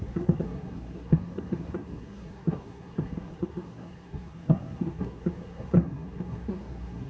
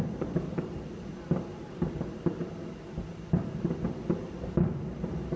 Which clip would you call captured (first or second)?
second